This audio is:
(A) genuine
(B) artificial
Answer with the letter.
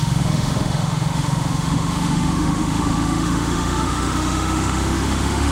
B